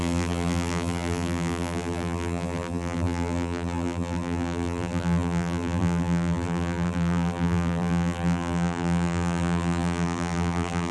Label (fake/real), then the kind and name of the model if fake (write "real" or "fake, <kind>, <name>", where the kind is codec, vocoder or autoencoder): fake, vocoder, BigVGAN v2